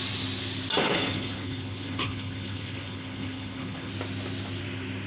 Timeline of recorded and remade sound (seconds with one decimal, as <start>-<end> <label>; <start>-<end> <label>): 0.0-0.8 recorded; 0.8-3.9 remade; 3.9-5.1 recorded